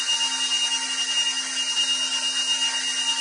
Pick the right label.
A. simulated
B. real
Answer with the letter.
B